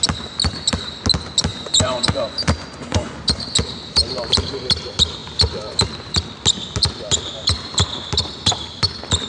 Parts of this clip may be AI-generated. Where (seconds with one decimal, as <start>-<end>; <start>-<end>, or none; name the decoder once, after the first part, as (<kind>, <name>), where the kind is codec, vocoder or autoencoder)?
1.5-3.2 (vocoder, Vocos)